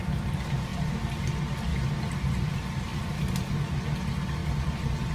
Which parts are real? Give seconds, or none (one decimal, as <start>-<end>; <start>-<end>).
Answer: 0.0-0.7; 1.2-1.7; 2.5-5.1